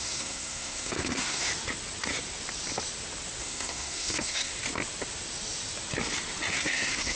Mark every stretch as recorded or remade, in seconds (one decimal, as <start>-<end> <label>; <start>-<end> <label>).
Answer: 0.0-1.5 remade; 1.5-3.4 recorded; 3.4-4.5 remade; 4.5-6.5 recorded; 6.5-7.2 remade